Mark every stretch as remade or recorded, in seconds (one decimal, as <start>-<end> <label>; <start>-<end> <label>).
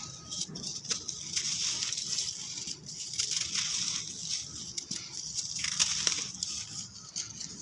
0.0-7.6 recorded